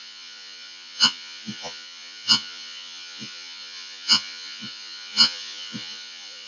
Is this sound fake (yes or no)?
yes